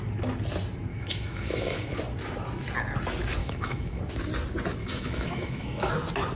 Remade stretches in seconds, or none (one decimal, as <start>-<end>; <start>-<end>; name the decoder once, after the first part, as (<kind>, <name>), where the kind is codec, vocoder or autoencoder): 0.9-2.0 (autoencoder, DAC-VAE); 3.4-4.0; 4.8-5.9